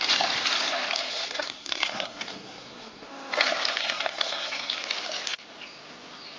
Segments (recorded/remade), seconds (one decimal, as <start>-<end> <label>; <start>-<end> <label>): 0.0-1.1 recorded; 1.1-3.1 remade; 3.1-3.8 recorded; 3.8-4.7 remade; 4.7-6.4 recorded

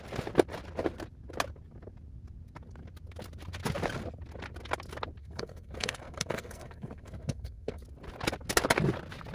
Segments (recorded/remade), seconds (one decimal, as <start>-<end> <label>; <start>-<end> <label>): 0.0-5.2 recorded; 5.2-7.8 remade; 7.8-9.3 recorded

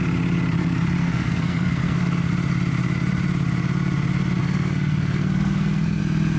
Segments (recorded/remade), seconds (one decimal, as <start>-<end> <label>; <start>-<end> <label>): 0.0-1.0 recorded; 1.0-2.3 remade; 2.3-4.4 recorded; 4.4-6.0 remade; 6.0-6.4 recorded

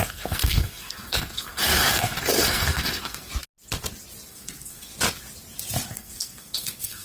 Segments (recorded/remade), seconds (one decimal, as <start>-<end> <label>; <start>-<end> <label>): 0.0-3.3 remade; 3.3-4.3 recorded; 4.3-4.9 remade; 4.9-5.9 recorded; 5.9-7.0 remade

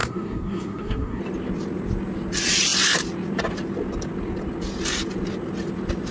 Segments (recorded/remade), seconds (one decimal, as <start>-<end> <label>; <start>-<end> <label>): 0.0-1.2 remade; 1.2-6.1 recorded

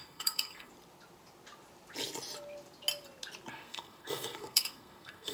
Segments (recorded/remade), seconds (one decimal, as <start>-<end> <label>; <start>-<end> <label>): 0.0-0.7 remade; 0.7-3.5 recorded; 3.5-5.3 remade

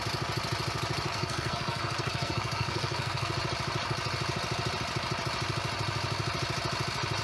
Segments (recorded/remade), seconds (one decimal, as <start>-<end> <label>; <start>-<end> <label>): 0.0-1.1 recorded; 1.1-3.3 remade; 3.3-7.2 recorded